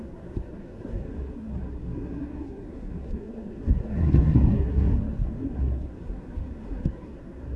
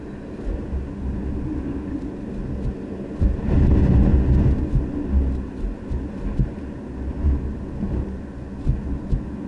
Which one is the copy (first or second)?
first